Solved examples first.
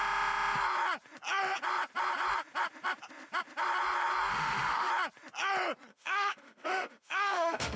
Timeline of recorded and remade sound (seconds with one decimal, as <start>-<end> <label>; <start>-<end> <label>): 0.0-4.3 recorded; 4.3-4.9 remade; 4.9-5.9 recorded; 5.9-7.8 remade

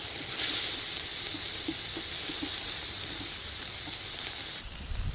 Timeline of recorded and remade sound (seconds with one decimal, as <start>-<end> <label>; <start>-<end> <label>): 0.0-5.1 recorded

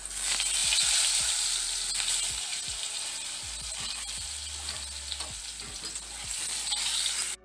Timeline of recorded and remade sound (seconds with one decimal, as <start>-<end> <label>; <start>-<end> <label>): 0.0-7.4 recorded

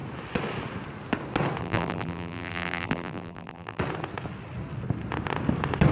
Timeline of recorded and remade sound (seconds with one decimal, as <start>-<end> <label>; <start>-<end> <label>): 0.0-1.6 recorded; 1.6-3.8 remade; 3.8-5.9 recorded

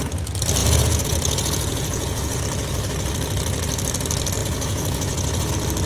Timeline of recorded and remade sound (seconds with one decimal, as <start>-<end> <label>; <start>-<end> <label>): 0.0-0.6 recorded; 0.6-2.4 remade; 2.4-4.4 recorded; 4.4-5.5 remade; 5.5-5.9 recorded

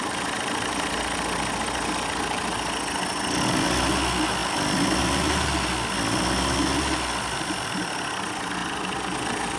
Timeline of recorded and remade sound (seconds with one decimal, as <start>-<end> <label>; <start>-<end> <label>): 0.0-9.6 recorded

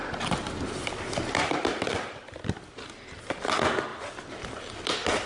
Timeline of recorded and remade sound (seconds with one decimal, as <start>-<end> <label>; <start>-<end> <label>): 0.0-3.9 recorded; 3.9-4.5 remade; 4.5-5.3 recorded